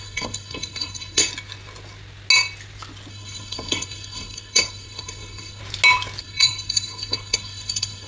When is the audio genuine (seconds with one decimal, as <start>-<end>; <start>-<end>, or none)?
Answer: 1.3-3.1; 5.6-6.2